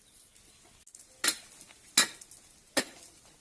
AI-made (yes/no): no